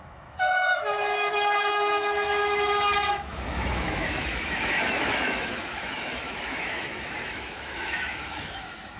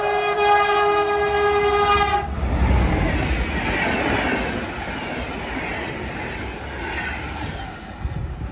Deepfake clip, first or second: first